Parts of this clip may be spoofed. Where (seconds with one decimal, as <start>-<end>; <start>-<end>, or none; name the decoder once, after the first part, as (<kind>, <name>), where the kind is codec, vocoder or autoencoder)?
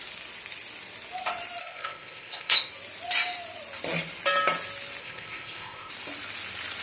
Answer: 1.6-2.7 (codec, ZipCodec); 5.0-5.9